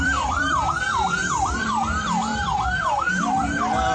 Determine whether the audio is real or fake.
fake